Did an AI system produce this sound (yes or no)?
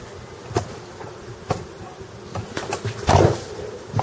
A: no